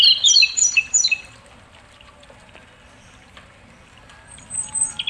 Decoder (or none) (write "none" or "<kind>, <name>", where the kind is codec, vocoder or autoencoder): vocoder, BigVGAN v2